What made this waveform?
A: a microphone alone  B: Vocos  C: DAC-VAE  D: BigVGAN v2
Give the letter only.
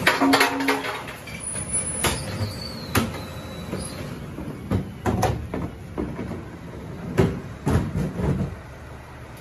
A